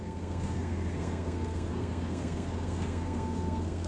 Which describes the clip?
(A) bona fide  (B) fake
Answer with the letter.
B